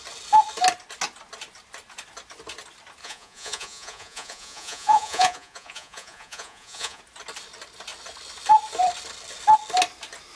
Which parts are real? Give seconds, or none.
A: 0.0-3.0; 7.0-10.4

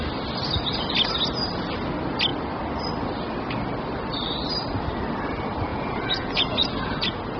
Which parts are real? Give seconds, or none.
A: 0.0-5.7

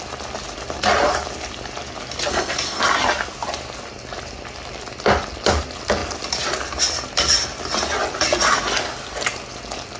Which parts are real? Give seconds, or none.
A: 0.0-2.3; 2.8-10.0

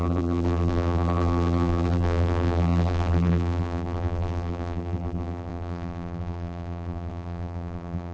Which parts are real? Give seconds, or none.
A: none

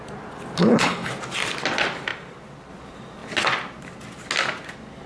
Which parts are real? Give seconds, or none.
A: 0.0-0.6; 1.1-5.1

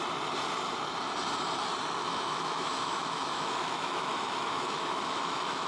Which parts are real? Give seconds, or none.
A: 0.0-2.0

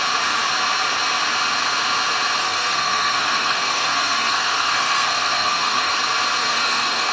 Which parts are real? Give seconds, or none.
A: 0.0-2.4; 5.9-6.4